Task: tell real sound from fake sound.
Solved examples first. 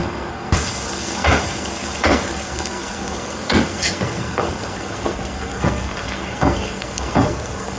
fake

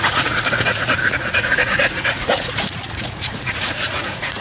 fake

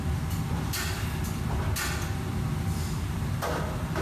real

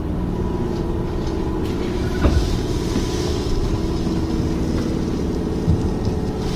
real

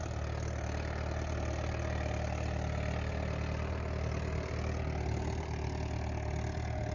real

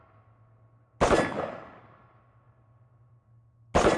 real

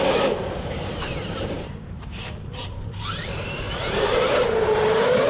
fake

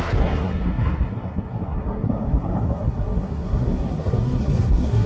fake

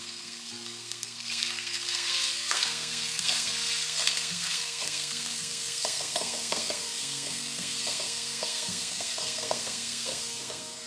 fake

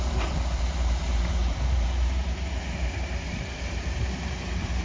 fake